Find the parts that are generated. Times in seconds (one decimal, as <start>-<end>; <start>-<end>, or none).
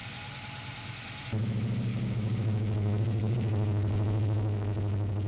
1.9-5.3